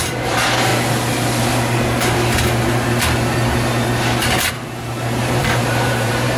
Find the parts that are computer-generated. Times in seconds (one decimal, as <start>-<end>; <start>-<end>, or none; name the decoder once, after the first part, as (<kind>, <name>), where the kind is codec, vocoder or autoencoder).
0.0-0.7 (vocoder, BigVGAN v2); 4.5-6.4